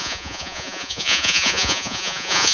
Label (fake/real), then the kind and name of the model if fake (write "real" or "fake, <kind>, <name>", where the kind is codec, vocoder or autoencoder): fake, vocoder, Vocos